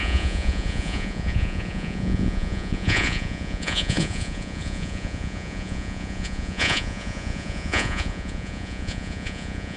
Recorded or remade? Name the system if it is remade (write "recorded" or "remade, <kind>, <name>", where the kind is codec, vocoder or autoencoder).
remade, vocoder, Vocos